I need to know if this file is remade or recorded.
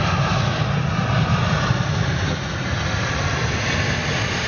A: recorded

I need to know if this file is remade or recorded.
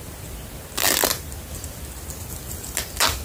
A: recorded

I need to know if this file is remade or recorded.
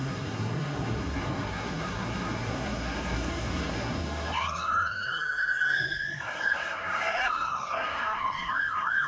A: remade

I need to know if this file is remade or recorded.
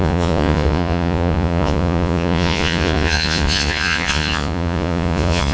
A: remade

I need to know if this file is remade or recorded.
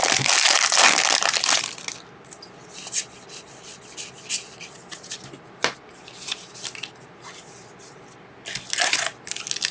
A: recorded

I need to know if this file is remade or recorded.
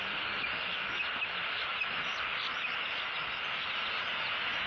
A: recorded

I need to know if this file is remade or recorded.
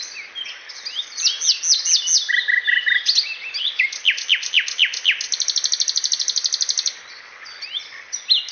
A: recorded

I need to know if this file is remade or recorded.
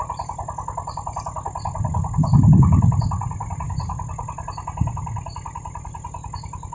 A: recorded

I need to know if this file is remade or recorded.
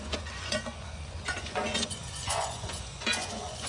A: remade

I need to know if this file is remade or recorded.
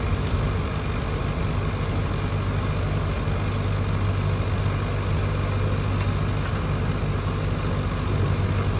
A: recorded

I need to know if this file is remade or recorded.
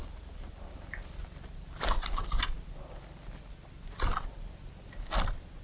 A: recorded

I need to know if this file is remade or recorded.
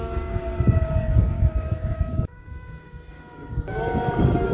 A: remade